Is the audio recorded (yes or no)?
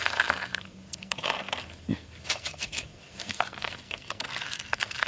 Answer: no